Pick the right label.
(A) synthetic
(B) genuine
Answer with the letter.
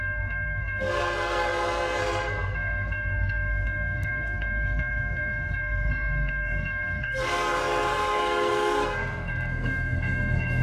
A